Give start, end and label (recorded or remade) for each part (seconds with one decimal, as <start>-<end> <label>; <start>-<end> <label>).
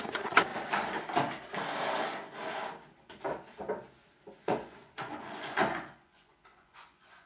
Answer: 0.0-0.5 remade; 0.5-4.4 recorded; 4.4-7.3 remade